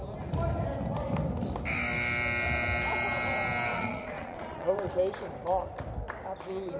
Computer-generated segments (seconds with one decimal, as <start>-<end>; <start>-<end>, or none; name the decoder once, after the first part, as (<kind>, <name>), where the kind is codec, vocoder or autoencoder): 3.7-4.9 (vocoder, Vocos)